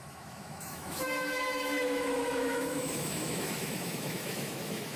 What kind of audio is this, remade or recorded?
remade